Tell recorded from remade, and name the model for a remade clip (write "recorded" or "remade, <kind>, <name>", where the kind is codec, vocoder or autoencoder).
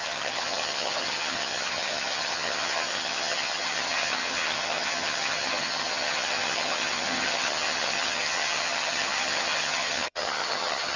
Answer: remade, vocoder, HiFi-GAN